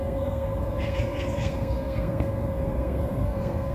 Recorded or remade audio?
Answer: remade